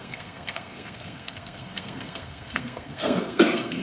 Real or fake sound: fake